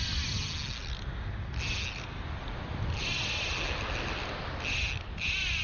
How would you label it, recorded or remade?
recorded